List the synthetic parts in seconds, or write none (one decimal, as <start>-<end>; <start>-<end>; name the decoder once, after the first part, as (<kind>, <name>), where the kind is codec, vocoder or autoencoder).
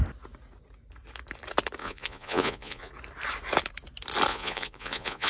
1.8-2.9 (vocoder, Vocos); 4.3-5.3